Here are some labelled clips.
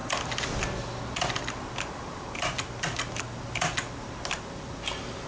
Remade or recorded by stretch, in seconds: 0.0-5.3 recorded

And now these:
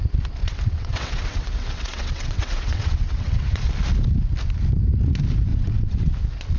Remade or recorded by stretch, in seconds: 0.0-0.4 recorded; 0.4-3.7 remade; 3.7-5.5 recorded; 5.5-6.1 remade; 6.1-6.6 recorded